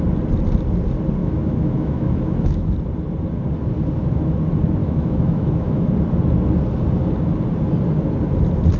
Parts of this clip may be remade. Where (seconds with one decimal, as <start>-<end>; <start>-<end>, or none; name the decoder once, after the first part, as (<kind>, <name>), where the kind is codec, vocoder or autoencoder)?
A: 1.2-2.7 (autoencoder, DAC-VAE); 4.8-5.9